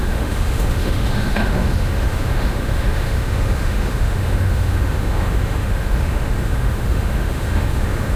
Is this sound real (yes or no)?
no